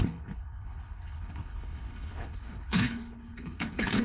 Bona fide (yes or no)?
no